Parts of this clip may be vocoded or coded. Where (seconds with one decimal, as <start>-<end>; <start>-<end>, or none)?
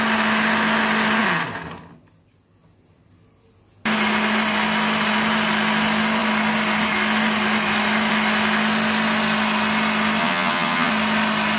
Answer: 10.2-10.9